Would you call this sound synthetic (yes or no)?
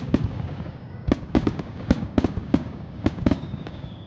yes